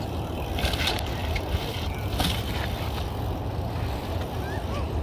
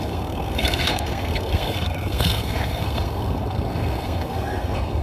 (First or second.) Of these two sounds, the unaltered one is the first